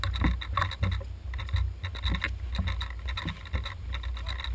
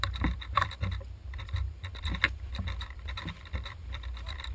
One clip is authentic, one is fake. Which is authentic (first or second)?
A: first